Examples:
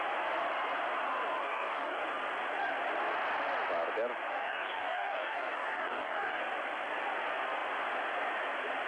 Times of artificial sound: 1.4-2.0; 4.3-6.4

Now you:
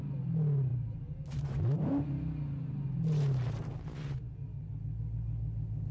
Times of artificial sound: none

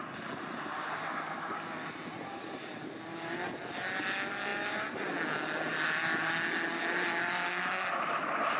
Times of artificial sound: none

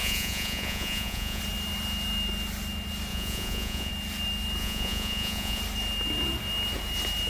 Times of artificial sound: 0.0-1.4; 3.1-3.9; 4.6-5.6

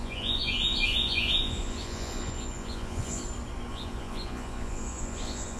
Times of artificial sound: 0.0-3.2; 3.7-5.6

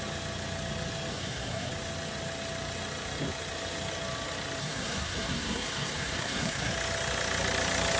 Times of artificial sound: 1.1-1.7; 4.6-6.7

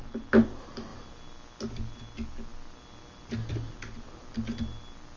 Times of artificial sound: none

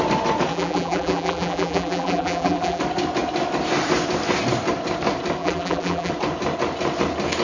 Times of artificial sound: 0.5-2.8; 5.4-6.1